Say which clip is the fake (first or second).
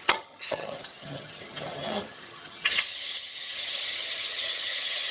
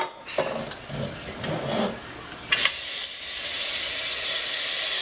first